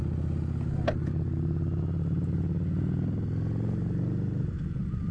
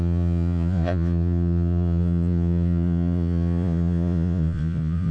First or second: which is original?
first